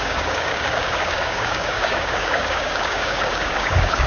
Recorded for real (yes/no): no